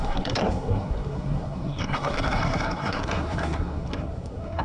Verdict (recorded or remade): remade